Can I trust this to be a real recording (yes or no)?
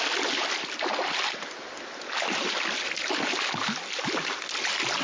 yes